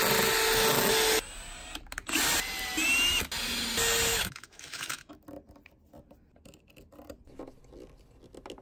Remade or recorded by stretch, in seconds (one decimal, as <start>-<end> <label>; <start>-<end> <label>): 0.0-4.1 recorded; 4.1-5.2 remade; 5.2-8.6 recorded